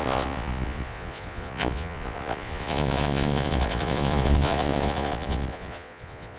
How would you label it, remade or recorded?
remade